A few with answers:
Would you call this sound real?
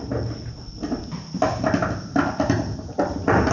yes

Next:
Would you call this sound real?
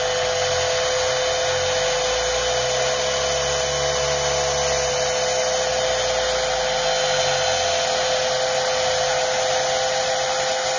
yes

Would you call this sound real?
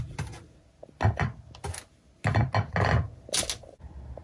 yes